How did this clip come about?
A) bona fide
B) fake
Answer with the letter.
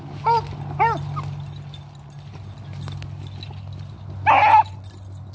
A